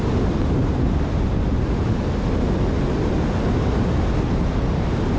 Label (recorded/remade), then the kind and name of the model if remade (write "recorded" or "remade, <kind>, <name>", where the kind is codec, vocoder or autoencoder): recorded